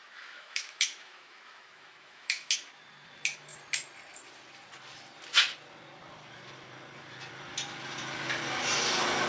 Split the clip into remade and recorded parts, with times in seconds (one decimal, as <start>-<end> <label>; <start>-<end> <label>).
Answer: 0.0-2.5 remade; 2.5-9.3 recorded